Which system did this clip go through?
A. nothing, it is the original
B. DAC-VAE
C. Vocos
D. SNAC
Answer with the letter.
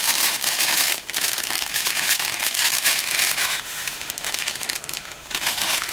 B